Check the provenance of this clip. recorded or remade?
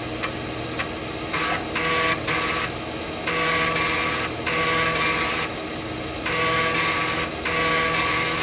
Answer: recorded